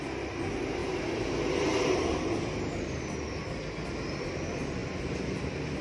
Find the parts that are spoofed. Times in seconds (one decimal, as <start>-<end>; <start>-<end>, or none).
none